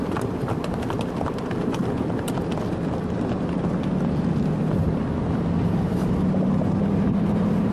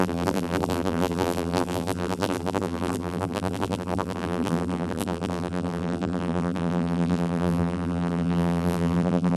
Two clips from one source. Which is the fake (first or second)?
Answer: second